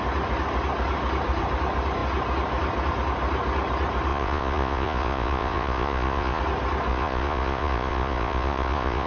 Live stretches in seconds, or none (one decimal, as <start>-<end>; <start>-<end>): 0.0-4.1; 6.4-6.9